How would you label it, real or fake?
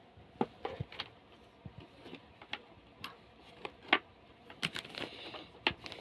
real